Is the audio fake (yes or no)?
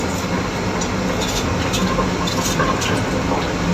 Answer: no